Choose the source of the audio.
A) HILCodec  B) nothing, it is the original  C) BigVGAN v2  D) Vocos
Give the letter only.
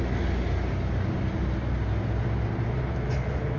B